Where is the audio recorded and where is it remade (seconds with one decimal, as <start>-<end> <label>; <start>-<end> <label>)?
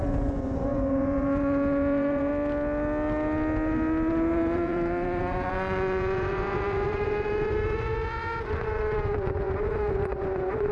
0.0-2.3 remade; 2.3-4.1 recorded; 4.1-10.7 remade